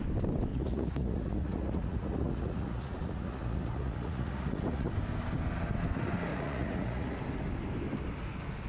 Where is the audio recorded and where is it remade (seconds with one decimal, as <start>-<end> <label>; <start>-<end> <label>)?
0.0-0.5 recorded; 0.5-4.9 remade; 4.9-6.3 recorded; 6.3-7.2 remade; 7.2-8.7 recorded